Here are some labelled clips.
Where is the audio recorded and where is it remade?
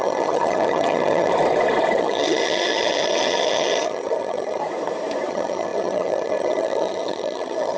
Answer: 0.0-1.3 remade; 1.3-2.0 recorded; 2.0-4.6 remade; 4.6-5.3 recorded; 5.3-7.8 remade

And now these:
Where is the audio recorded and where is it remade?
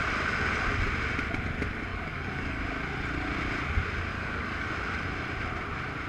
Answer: 0.0-1.9 recorded; 1.9-2.6 remade; 2.6-4.1 recorded; 4.1-4.7 remade; 4.7-6.1 recorded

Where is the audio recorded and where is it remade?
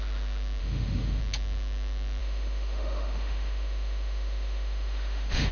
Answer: 0.0-0.6 recorded; 0.6-1.2 remade; 1.2-2.2 recorded; 2.2-5.5 remade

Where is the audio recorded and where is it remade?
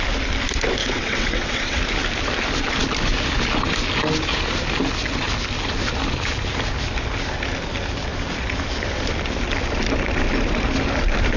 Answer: 0.0-0.8 recorded; 0.8-1.8 remade; 1.8-11.4 recorded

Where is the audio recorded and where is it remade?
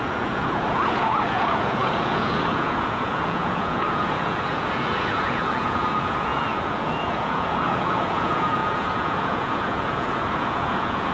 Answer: 0.0-11.1 remade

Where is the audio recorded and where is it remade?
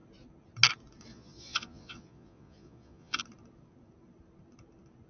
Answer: 0.0-1.1 recorded; 1.1-3.2 remade; 3.2-5.1 recorded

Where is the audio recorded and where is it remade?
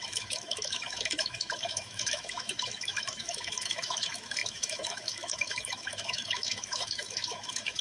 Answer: 0.0-7.8 remade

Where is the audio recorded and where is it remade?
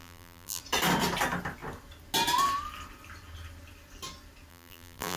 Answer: 0.0-0.6 remade; 0.6-4.5 recorded; 4.5-5.2 remade